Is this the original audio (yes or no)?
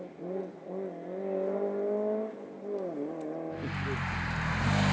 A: yes